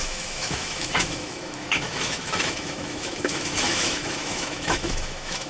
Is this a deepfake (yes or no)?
yes